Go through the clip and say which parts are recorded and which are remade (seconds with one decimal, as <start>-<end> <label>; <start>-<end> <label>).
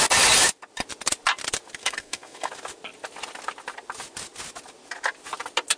0.0-1.8 recorded; 1.8-2.5 remade; 2.5-5.8 recorded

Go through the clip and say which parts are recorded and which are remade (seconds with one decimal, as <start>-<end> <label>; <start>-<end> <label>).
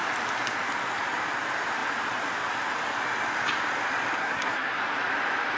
0.0-4.2 recorded; 4.2-4.8 remade; 4.8-5.6 recorded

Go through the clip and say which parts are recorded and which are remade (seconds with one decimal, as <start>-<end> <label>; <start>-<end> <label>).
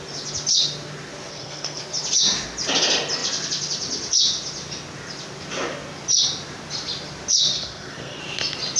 0.0-1.3 recorded; 1.3-1.8 remade; 1.8-7.5 recorded; 7.5-8.2 remade; 8.2-8.8 recorded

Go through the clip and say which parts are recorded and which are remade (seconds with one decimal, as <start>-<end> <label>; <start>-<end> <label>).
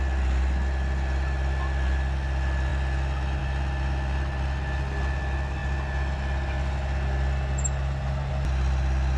0.0-9.2 recorded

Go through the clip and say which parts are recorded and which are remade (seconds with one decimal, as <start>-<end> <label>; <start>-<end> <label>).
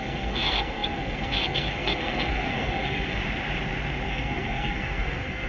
0.0-3.2 remade; 3.2-4.1 recorded; 4.1-5.5 remade